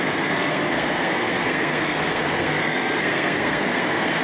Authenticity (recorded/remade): remade